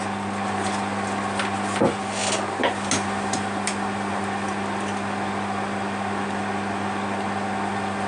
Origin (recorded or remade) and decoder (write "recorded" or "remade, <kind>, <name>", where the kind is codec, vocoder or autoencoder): recorded